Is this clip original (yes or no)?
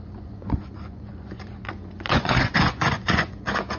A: no